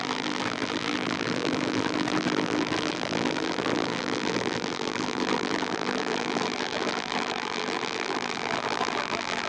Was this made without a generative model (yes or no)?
no